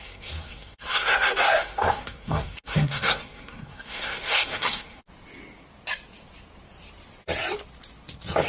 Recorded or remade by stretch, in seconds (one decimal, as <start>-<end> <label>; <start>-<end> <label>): 0.0-5.0 remade; 5.0-8.5 recorded